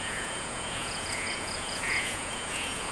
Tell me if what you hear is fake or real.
fake